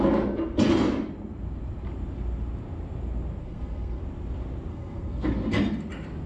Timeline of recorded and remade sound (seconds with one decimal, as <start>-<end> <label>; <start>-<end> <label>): 0.0-3.4 recorded; 3.4-4.0 remade; 4.0-4.7 recorded; 4.7-5.3 remade; 5.3-6.3 recorded